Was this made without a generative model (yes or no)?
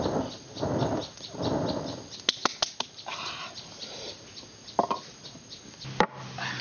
yes